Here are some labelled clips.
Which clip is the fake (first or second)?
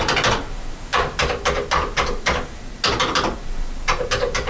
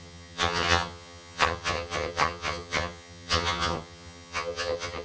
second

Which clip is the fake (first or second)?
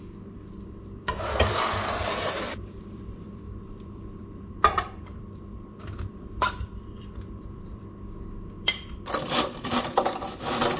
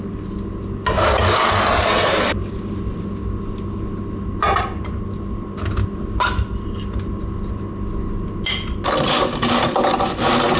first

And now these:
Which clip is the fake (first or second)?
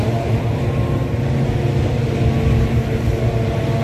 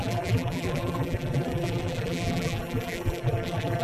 second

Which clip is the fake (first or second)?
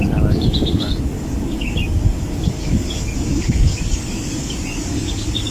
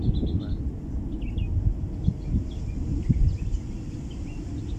first